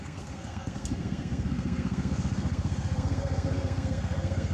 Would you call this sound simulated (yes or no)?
yes